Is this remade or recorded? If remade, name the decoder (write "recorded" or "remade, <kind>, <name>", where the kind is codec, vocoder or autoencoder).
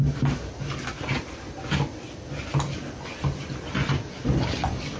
recorded